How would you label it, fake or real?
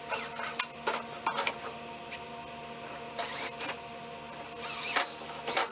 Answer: real